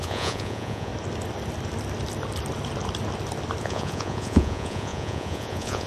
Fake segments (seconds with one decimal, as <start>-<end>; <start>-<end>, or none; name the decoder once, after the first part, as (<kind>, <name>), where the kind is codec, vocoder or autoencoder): 0.0-0.9 (vocoder, Vocos); 3.6-5.9